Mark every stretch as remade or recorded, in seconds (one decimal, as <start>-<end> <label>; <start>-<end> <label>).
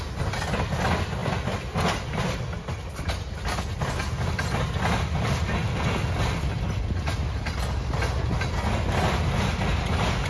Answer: 0.0-10.3 recorded